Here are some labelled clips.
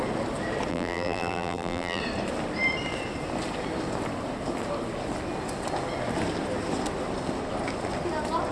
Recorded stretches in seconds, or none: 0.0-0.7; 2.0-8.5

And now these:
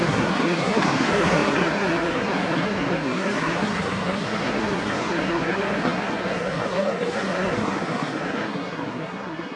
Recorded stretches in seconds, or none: none

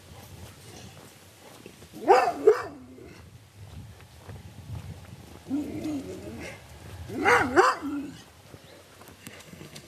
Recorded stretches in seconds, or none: 0.0-9.2